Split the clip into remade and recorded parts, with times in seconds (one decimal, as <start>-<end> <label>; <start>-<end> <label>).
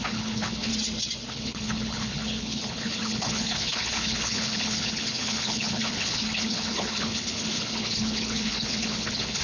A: 0.0-0.7 remade; 0.7-1.3 recorded; 1.3-9.4 remade